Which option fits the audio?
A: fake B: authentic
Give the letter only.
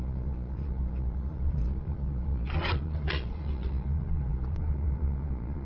A